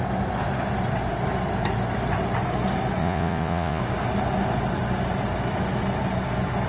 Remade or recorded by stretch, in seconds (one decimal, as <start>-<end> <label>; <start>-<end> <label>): 0.0-3.0 recorded; 3.0-3.8 remade; 3.8-6.7 recorded